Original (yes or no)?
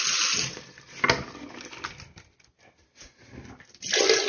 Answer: yes